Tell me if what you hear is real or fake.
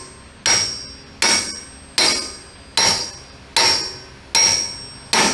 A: real